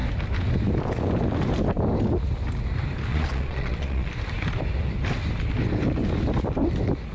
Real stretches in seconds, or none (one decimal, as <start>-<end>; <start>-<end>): 0.0-3.1; 4.1-7.1